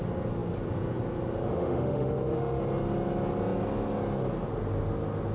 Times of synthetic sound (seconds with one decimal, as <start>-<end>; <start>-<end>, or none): 1.5-2.6